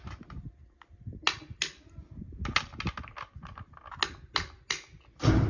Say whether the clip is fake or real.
real